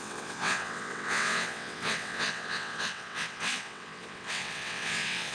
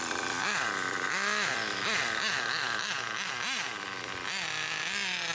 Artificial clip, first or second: first